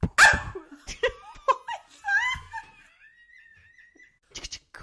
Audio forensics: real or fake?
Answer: real